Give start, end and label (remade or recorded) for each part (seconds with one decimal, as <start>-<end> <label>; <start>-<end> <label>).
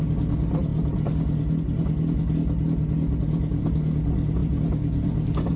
0.0-5.6 recorded